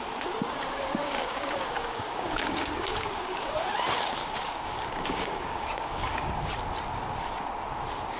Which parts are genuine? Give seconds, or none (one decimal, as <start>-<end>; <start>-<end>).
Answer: 0.0-1.0; 3.5-4.2; 6.5-8.2